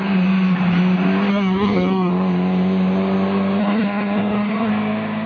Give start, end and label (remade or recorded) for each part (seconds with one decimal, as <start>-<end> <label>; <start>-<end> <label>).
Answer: 0.0-1.3 recorded; 1.3-2.1 remade; 2.1-3.6 recorded; 3.6-4.7 remade; 4.7-5.3 recorded